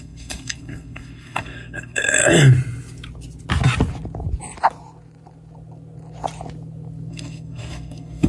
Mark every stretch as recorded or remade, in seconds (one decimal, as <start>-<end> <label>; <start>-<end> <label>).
0.0-2.2 remade; 2.2-7.1 recorded; 7.1-8.3 remade